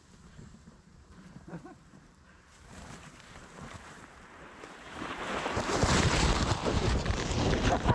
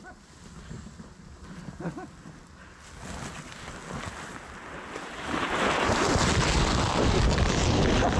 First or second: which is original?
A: second